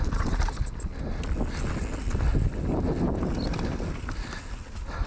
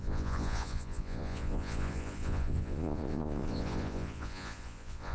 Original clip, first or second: first